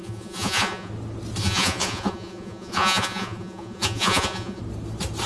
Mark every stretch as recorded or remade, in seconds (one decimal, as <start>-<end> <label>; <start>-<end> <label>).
0.0-0.9 remade; 0.9-1.4 recorded; 1.4-4.6 remade; 4.6-5.3 recorded